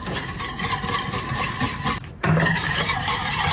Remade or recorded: remade